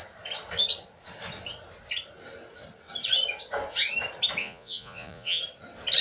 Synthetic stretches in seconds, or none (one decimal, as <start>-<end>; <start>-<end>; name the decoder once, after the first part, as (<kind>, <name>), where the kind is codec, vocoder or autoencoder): 4.4-5.4 (vocoder, Vocos)